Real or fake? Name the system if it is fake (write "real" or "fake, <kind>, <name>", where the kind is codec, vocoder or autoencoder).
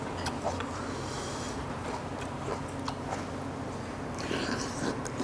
real